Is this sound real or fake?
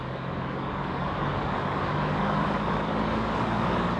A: fake